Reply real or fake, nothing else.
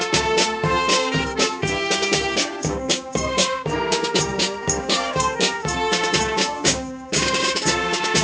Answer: fake